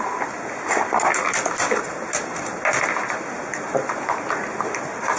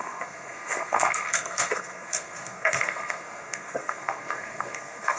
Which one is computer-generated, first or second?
second